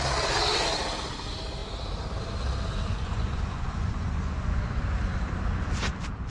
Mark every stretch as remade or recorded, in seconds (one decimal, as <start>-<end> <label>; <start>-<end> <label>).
0.0-2.9 recorded; 2.9-4.8 remade; 4.8-6.3 recorded